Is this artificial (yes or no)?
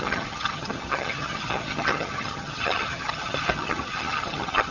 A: yes